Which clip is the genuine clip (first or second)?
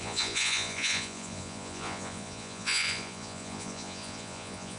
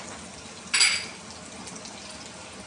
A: second